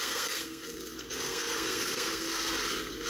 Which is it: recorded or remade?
remade